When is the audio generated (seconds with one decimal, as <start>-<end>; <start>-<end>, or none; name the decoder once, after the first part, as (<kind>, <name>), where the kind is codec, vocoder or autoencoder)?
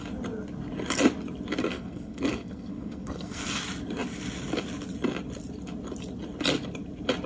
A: 1.6-3.6 (codec, SNAC)